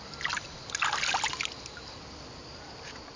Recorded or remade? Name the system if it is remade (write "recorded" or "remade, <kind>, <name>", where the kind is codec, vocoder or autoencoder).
recorded